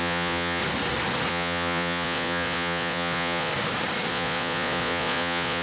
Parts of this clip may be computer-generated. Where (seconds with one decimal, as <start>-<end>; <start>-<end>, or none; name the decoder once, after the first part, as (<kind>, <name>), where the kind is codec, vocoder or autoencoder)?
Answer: 0.0-0.6 (vocoder, Vocos); 1.3-3.5; 4.1-5.6